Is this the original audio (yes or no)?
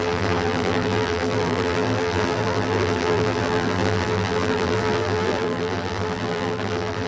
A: no